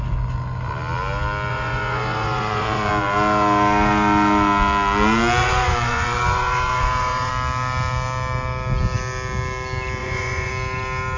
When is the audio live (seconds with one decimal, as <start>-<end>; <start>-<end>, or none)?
0.0-1.5; 2.9-5.4; 7.3-10.0; 10.5-11.2

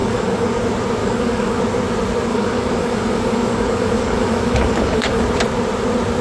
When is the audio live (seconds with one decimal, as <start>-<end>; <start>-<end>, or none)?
0.6-1.0; 1.6-2.3; 5.2-6.2

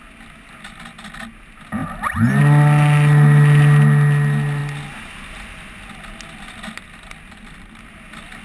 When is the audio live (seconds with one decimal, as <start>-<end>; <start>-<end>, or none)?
0.0-8.4

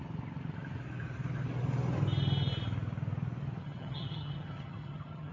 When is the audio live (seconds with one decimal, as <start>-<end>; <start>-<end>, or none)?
0.0-3.6